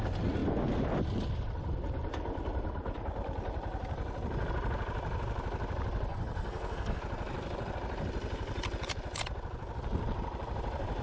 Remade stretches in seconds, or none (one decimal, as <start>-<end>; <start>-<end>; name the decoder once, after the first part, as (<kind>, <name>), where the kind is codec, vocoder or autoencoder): 6.1-7.0 (codec, SNAC)